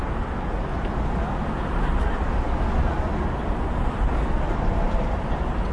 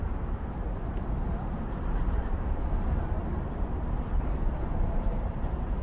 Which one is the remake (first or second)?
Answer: second